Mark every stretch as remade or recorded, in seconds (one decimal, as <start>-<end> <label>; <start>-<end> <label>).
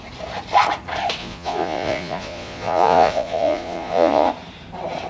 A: 0.0-1.2 recorded; 1.2-4.3 remade; 4.3-5.1 recorded